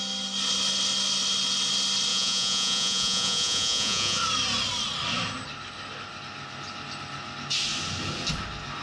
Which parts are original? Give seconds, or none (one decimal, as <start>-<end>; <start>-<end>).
0.0-2.1; 4.2-8.8